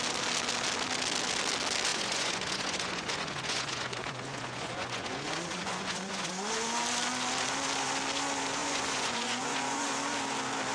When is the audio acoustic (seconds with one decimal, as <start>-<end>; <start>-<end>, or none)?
0.0-1.9; 6.3-8.6; 9.9-10.7